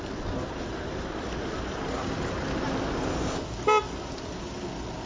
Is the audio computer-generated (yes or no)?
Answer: no